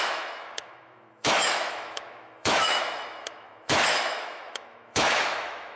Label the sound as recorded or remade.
remade